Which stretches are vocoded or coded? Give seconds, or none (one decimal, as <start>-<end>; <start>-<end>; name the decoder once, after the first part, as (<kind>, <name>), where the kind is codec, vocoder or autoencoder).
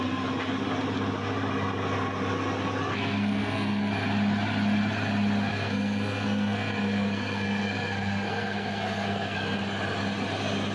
2.9-3.9 (codec, SNAC); 5.5-9.6